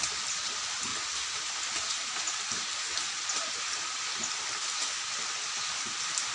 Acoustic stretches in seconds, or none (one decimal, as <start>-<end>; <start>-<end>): 0.0-6.3